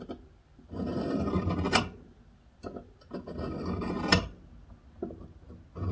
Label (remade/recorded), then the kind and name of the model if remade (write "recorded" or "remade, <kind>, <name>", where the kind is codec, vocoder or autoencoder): recorded